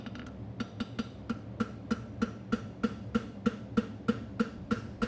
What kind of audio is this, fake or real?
real